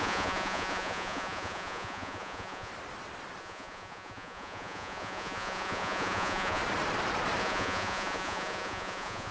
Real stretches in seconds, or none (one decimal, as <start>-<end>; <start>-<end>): 2.7-3.4; 6.6-7.4